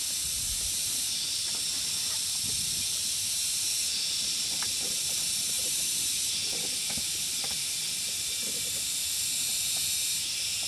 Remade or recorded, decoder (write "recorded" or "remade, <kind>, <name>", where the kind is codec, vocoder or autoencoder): recorded